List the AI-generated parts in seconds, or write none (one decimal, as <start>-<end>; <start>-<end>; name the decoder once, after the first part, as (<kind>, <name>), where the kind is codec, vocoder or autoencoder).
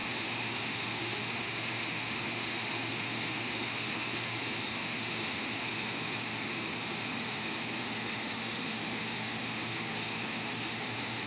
0.0-11.3 (autoencoder, DAC-VAE)